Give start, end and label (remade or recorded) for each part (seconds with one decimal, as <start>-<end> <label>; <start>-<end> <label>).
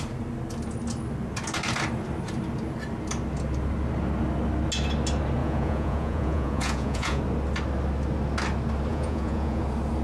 0.0-5.4 recorded; 5.4-7.2 remade; 7.2-8.9 recorded; 8.9-9.6 remade; 9.6-10.0 recorded